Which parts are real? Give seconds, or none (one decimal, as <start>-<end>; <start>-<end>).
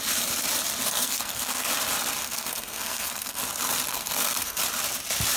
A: 0.0-0.8; 1.7-2.2; 3.4-3.9; 4.6-5.4